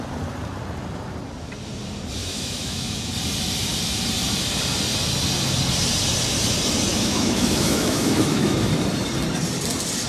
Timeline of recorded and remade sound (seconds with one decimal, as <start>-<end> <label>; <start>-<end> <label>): 0.0-2.2 recorded; 2.2-3.1 remade; 3.1-6.9 recorded; 6.9-8.7 remade; 8.7-10.1 recorded